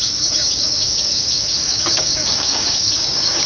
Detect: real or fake fake